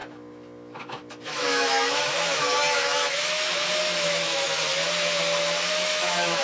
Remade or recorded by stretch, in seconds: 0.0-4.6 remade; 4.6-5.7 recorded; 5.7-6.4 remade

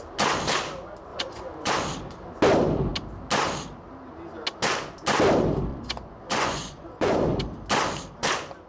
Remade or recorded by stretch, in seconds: 0.0-1.1 recorded; 1.1-1.7 remade; 1.7-5.7 recorded; 5.7-7.4 remade; 7.4-8.7 recorded

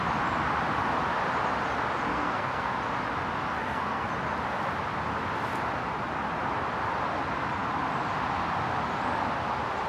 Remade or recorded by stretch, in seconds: 0.0-2.1 recorded; 2.1-2.8 remade; 2.8-3.6 recorded; 3.6-4.1 remade; 4.1-9.9 recorded